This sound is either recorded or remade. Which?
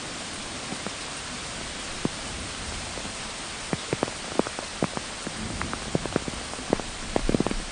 recorded